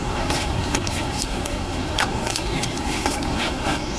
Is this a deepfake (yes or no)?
yes